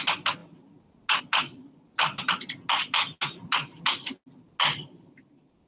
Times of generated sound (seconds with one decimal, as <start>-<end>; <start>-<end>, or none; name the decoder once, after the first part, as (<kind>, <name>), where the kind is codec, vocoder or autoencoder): none